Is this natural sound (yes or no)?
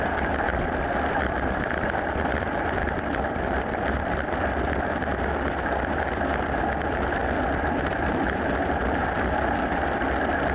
no